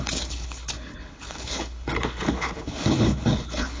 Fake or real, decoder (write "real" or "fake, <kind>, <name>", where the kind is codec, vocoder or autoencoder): fake, codec, HILCodec